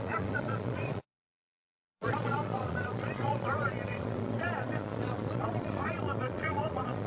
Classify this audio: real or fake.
fake